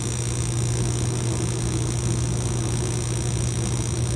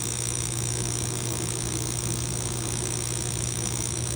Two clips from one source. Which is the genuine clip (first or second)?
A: first